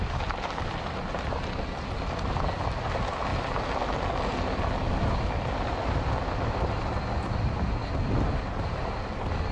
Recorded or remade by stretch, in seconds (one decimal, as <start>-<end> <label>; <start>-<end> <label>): 0.0-9.5 recorded

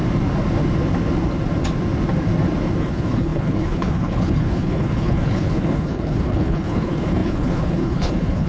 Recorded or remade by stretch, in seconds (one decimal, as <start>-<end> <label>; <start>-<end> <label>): 0.0-2.8 recorded; 2.8-8.5 remade

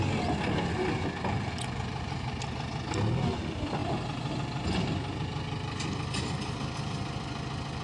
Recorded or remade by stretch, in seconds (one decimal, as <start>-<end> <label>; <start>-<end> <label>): 0.0-7.8 recorded

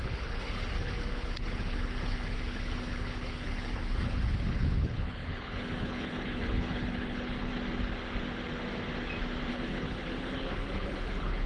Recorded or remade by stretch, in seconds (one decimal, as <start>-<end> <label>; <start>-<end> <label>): 0.0-7.5 remade; 7.5-9.5 recorded; 9.5-11.5 remade

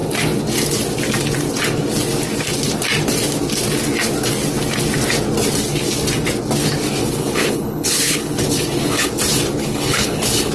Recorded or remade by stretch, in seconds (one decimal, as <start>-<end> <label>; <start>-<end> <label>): 0.0-7.0 recorded; 7.0-9.1 remade; 9.1-9.6 recorded; 9.6-10.5 remade

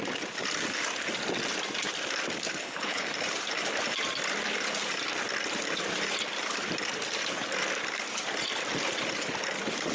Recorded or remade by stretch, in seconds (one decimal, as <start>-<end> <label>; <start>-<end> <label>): 0.0-2.6 recorded; 2.6-3.1 remade; 3.1-9.9 recorded

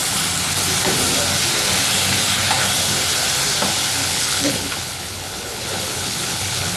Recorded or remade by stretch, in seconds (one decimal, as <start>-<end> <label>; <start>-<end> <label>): 0.0-4.0 recorded; 4.0-6.8 remade

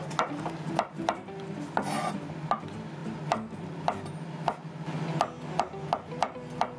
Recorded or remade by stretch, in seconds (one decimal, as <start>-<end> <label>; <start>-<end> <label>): 0.0-6.8 recorded